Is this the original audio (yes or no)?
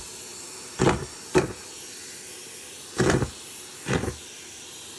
yes